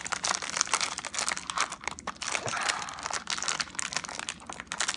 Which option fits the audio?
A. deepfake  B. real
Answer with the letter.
B